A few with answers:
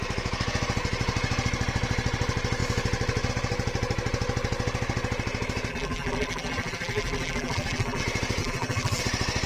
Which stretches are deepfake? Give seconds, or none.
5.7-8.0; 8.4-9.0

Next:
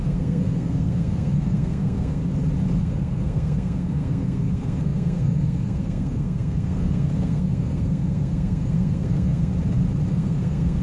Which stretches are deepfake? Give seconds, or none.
0.0-2.2; 2.8-9.5; 10.1-10.8

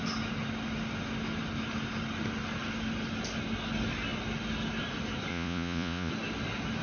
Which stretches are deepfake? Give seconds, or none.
5.3-6.1

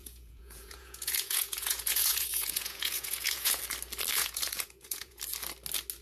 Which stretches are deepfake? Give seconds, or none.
0.0-3.6; 4.1-5.2

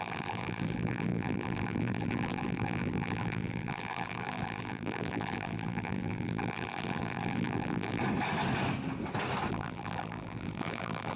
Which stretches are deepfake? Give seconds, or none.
0.0-8.0; 9.5-11.2

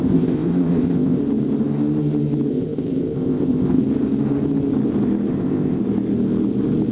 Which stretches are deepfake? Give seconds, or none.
0.0-1.2; 2.5-3.8; 5.3-5.8

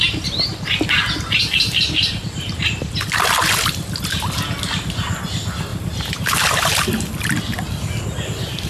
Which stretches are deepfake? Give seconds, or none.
5.7-6.4

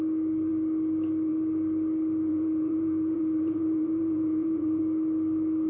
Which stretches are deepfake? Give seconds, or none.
2.3-4.8